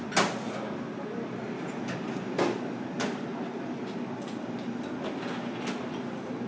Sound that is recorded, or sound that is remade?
recorded